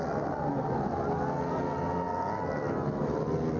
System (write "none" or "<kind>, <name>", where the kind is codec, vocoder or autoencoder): none